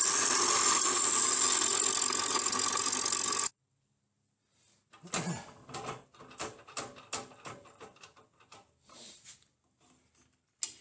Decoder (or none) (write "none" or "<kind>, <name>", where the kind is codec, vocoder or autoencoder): none